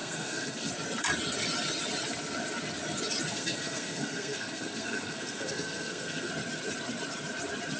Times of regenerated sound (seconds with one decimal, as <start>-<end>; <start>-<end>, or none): 0.0-0.7; 3.3-6.3